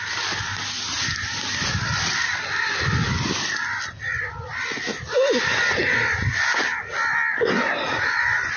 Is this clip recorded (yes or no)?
yes